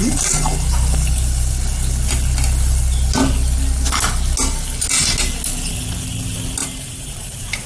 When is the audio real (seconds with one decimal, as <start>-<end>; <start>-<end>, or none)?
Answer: 0.0-6.6